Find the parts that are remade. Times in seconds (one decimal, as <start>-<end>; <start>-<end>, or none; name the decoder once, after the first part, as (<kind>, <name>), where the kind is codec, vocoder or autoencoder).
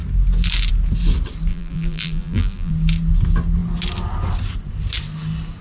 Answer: 1.5-2.7 (vocoder, BigVGAN v2)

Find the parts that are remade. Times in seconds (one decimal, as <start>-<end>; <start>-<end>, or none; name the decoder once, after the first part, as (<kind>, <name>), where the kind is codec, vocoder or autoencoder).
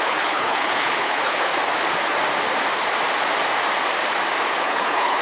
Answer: 0.0-1.5 (codec, HILCodec); 4.6-5.2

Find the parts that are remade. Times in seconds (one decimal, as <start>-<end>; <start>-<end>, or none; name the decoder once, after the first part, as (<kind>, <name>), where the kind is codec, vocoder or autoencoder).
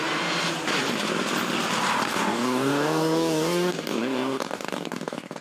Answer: 2.1-5.4 (codec, DAC)